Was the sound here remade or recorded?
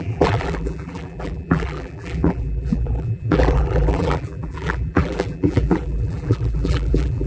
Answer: remade